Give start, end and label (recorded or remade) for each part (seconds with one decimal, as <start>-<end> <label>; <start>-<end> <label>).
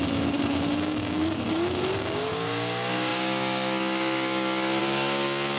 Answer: 0.0-1.2 remade; 1.2-2.0 recorded; 2.0-5.6 remade